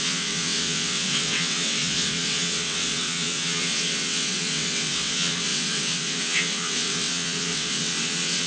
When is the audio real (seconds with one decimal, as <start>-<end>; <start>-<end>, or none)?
none